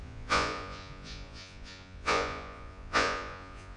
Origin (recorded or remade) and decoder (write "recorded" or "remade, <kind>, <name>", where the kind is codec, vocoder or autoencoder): remade, vocoder, Vocos